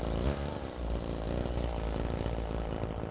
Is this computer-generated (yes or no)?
no